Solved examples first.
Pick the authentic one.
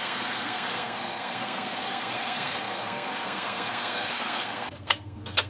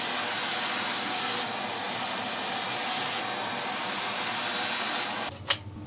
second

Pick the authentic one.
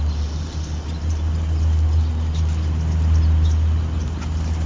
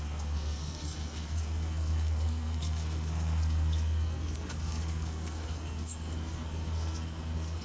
first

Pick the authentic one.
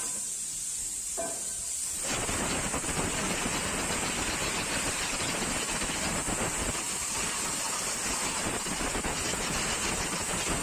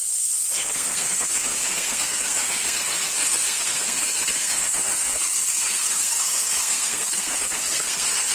first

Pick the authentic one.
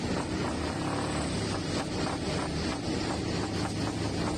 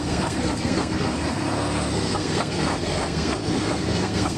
first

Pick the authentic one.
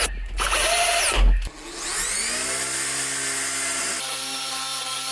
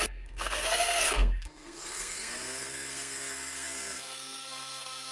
first